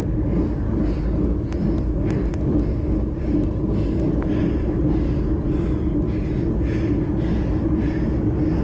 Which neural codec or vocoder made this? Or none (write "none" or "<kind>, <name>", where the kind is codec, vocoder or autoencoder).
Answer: none